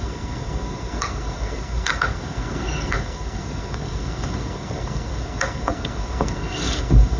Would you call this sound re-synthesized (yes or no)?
yes